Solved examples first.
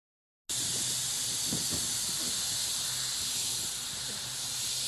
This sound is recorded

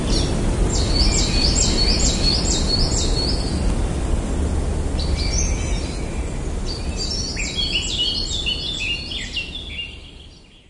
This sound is recorded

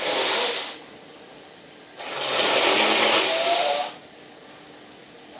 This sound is recorded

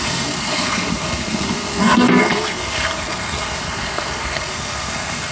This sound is remade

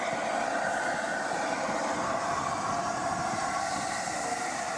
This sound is recorded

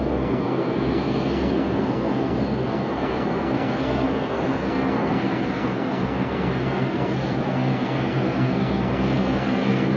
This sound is remade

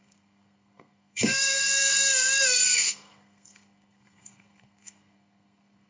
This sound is remade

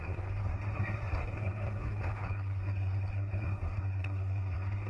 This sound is remade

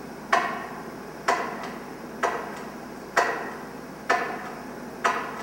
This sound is recorded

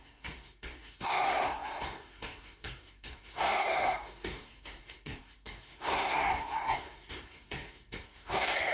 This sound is remade